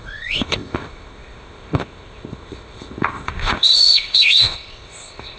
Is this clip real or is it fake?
fake